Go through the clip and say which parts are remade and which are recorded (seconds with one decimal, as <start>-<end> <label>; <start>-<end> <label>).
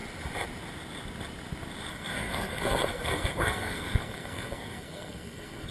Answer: 0.0-1.9 recorded; 1.9-5.7 remade